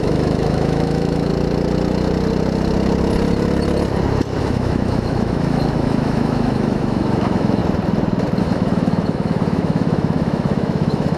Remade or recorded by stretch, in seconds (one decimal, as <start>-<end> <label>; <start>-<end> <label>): 0.0-1.3 remade; 1.3-4.4 recorded; 4.4-7.6 remade; 7.6-8.4 recorded; 8.4-11.2 remade